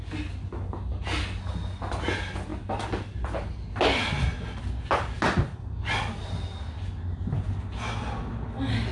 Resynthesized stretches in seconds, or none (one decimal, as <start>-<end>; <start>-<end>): none